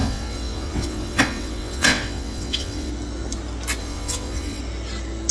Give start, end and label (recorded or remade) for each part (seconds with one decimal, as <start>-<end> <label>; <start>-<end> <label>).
0.0-2.9 remade; 2.9-3.8 recorded; 3.8-4.6 remade; 4.6-5.3 recorded